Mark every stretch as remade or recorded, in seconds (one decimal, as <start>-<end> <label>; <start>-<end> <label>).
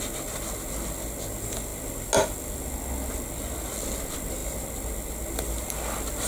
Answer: 0.0-6.3 recorded